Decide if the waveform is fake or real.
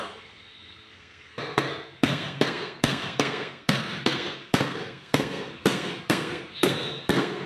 fake